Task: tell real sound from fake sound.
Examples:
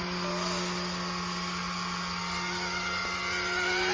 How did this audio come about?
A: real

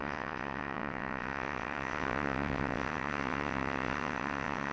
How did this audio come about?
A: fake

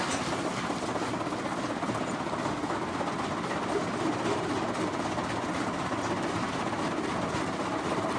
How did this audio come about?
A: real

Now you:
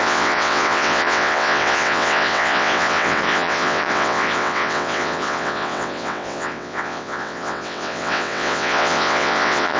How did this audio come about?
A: fake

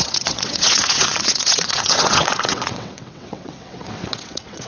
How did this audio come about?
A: fake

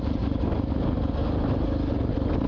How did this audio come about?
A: real